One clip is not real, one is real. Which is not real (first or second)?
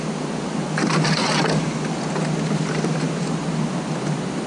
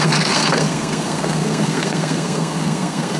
second